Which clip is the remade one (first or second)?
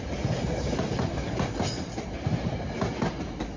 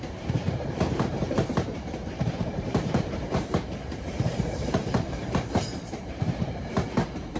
second